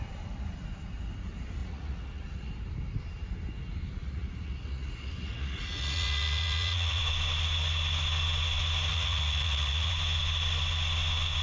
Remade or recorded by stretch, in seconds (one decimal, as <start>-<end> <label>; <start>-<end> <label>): 0.0-1.6 recorded; 1.6-2.5 remade; 2.5-4.0 recorded; 4.0-7.0 remade; 7.0-8.9 recorded; 8.9-9.9 remade; 9.9-11.4 recorded